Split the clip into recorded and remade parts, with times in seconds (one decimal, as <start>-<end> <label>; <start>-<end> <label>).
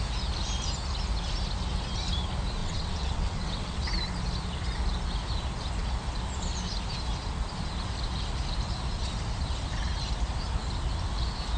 0.0-2.6 recorded; 2.6-3.8 remade; 3.8-11.6 recorded